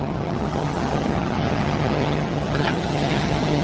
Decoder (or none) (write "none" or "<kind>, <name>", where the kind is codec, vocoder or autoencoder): vocoder, HiFi-GAN